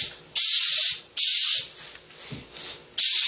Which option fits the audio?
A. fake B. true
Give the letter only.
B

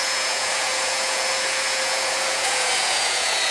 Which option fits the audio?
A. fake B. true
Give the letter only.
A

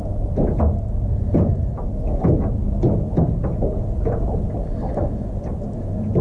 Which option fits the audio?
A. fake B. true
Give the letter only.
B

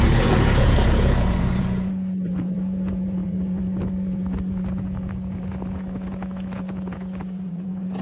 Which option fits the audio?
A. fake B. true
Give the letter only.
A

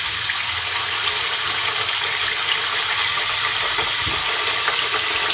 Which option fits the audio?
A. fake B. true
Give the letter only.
B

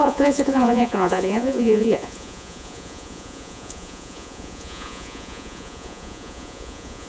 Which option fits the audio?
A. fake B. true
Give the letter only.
A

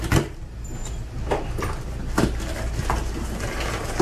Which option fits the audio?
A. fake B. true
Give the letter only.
B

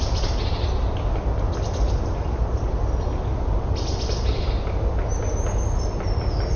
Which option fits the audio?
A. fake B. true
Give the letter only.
B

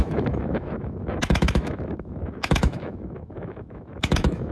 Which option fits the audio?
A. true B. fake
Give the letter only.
B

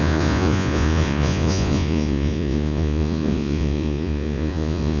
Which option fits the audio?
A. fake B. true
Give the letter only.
A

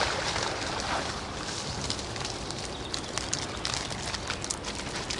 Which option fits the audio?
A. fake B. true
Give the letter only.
B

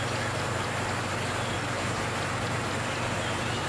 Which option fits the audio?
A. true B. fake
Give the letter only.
A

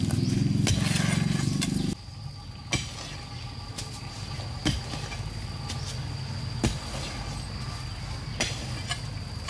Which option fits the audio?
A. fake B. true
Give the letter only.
B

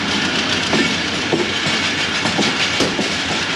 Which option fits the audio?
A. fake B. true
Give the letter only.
B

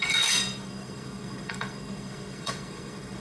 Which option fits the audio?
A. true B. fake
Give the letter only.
B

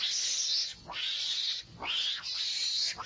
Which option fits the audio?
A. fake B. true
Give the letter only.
B